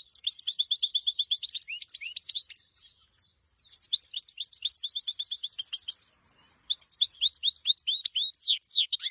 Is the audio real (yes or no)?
no